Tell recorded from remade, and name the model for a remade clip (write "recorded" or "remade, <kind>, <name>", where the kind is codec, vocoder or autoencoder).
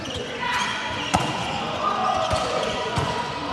remade, vocoder, Vocos